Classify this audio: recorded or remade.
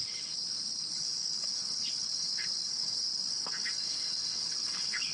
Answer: remade